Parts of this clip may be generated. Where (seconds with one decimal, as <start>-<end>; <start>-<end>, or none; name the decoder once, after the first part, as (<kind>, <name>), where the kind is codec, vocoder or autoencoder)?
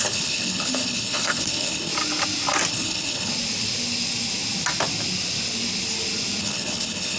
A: 0.0-1.9 (codec, HILCodec); 2.7-3.3; 6.4-7.2